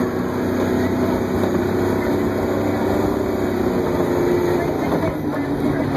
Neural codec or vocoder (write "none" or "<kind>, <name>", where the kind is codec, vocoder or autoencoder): none